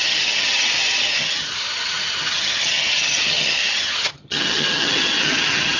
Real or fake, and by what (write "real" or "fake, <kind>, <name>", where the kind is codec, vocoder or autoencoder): fake, vocoder, HiFi-GAN